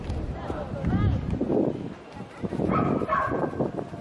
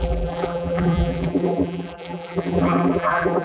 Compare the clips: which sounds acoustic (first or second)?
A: first